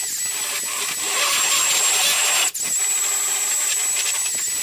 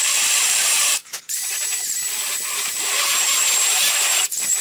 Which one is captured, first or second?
first